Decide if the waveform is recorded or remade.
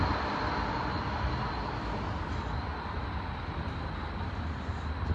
recorded